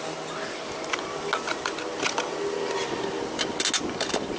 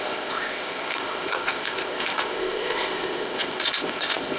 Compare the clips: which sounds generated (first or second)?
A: second